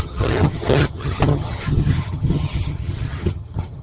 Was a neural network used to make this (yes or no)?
yes